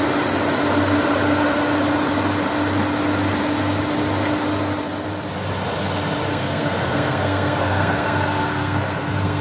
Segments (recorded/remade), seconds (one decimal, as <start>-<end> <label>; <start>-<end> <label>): 0.0-6.3 recorded; 6.3-9.4 remade